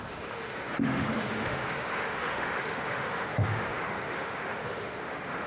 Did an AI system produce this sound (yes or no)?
yes